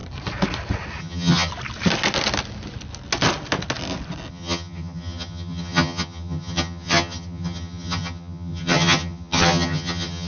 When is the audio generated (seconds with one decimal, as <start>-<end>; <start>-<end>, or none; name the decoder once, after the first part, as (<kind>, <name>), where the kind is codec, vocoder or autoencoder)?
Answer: 1.0-1.5 (vocoder, HiFi-GAN); 4.3-10.3